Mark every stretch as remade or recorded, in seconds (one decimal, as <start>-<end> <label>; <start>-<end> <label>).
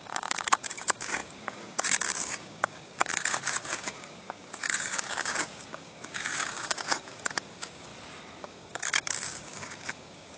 0.0-7.9 remade; 7.9-8.4 recorded; 8.4-10.4 remade